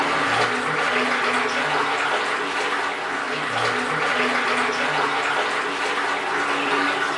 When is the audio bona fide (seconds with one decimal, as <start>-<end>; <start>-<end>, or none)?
0.0-7.2